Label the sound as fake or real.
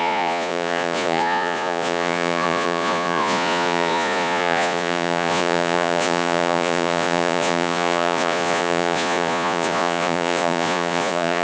fake